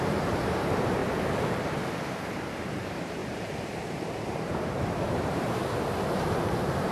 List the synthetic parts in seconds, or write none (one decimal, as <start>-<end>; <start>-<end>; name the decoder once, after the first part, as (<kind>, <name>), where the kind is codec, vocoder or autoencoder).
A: 0.0-1.0 (vocoder, BigVGAN v2); 2.1-5.6; 6.2-6.9